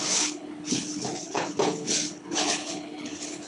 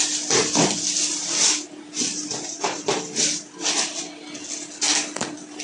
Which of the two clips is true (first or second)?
second